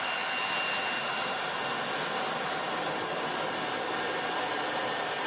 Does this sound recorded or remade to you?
recorded